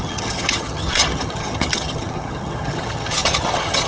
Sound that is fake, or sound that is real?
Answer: fake